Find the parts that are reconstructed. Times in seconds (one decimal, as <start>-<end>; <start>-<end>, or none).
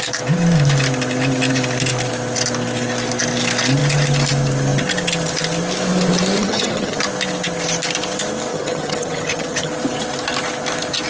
6.4-7.0; 8.5-9.7